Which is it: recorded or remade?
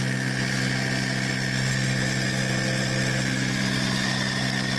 recorded